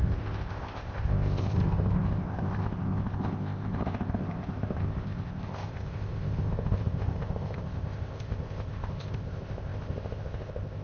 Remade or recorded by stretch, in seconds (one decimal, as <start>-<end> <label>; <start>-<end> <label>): 0.0-10.8 remade